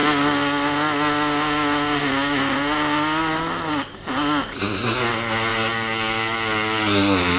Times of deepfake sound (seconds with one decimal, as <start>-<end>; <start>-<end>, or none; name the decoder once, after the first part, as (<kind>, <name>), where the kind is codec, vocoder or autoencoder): none